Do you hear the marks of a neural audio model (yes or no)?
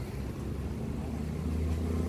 no